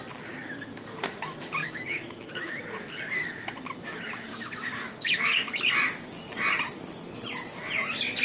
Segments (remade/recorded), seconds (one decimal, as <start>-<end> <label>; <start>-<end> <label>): 0.0-0.4 recorded; 0.4-1.0 remade; 1.0-1.6 recorded; 1.6-2.6 remade; 2.6-4.3 recorded; 4.3-5.5 remade; 5.5-8.2 recorded